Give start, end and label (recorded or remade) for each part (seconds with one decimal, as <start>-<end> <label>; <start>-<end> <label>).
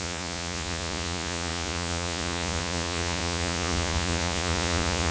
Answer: 0.0-5.1 remade